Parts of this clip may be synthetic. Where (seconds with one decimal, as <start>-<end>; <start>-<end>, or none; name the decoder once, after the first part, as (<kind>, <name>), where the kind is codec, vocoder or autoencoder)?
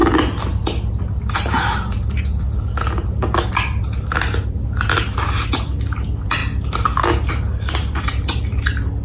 none